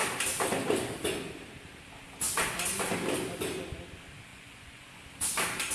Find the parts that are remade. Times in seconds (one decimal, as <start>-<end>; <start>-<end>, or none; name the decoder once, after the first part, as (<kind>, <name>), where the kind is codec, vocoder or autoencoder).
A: 4.3-5.0 (vocoder, Vocos)